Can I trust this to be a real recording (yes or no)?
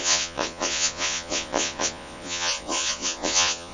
no